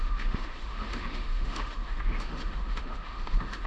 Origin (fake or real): fake